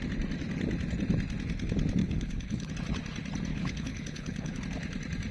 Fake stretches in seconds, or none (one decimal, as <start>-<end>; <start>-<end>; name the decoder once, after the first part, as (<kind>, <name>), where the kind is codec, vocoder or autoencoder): 2.0-2.7 (codec, HILCodec); 3.5-4.6